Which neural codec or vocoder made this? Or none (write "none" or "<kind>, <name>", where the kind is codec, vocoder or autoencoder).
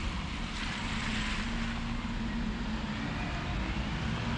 none